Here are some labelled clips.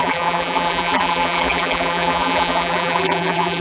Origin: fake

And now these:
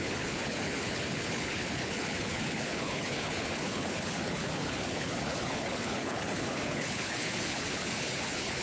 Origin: fake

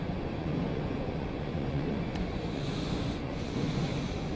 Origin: fake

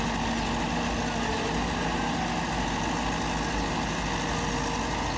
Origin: real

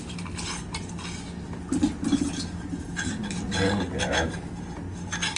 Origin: real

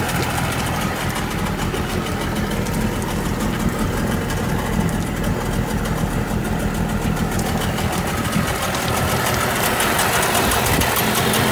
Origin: real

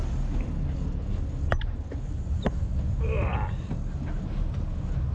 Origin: real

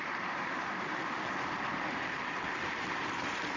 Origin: fake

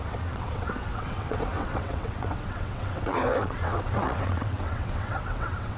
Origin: fake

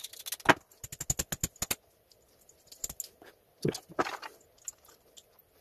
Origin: real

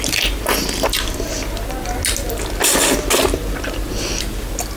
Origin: real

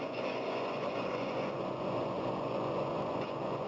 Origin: fake